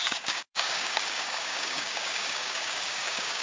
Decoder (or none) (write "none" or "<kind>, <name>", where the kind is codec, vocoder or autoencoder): codec, DAC